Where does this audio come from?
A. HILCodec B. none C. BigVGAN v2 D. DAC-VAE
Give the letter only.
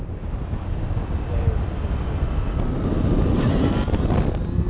B